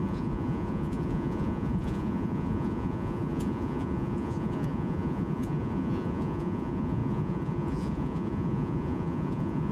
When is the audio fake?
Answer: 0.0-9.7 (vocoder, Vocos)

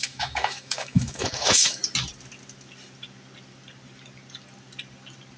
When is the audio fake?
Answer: 0.0-1.8 (autoencoder, DAC-VAE)

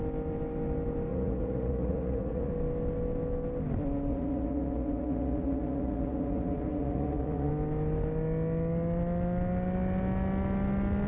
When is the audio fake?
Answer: 1.1-2.5 (vocoder, Vocos); 4.1-7.5

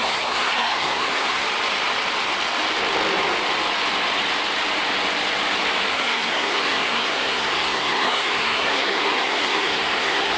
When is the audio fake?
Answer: 0.0-1.4 (codec, SNAC); 5.9-10.4

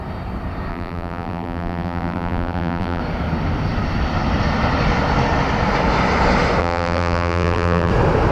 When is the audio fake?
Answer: 0.7-3.0 (vocoder, BigVGAN v2); 6.6-7.9

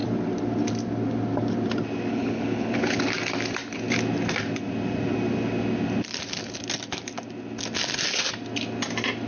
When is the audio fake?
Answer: 2.1-3.0 (codec, HILCodec)